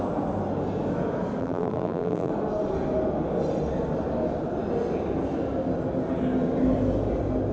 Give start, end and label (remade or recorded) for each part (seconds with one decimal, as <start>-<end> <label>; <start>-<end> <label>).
0.0-1.4 recorded; 1.4-2.3 remade; 2.3-7.5 recorded